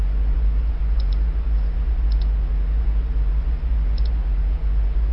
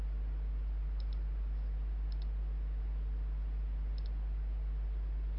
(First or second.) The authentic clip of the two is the second